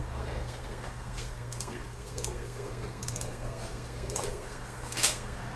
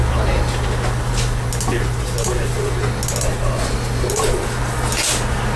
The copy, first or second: first